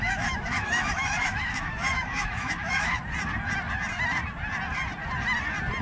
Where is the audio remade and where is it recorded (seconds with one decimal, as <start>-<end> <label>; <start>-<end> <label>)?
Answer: 0.0-3.0 remade; 3.0-5.8 recorded